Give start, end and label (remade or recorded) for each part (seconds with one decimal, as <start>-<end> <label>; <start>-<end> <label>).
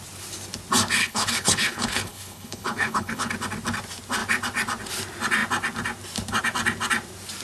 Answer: 0.0-1.0 recorded; 1.0-3.3 remade; 3.3-7.4 recorded